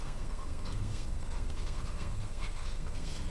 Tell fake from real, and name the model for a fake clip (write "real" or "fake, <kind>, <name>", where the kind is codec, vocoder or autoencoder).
fake, codec, SNAC